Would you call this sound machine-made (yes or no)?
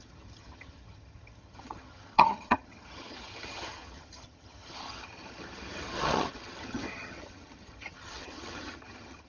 yes